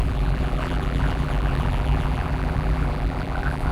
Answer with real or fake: fake